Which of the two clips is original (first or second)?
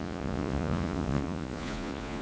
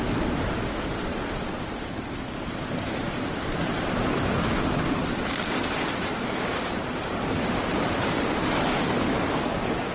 second